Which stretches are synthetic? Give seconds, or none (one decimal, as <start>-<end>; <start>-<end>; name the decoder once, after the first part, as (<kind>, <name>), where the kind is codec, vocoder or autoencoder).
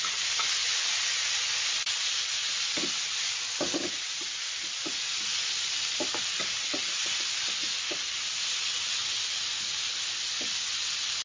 none